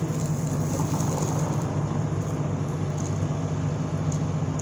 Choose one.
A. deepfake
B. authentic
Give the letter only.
B